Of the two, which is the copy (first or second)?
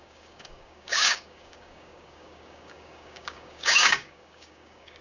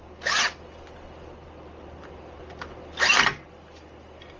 first